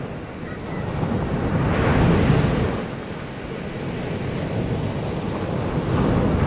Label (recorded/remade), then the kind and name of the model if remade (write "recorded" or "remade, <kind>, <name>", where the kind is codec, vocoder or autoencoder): recorded